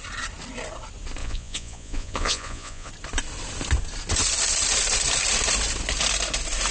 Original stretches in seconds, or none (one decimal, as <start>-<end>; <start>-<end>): 0.0-1.2; 2.9-6.7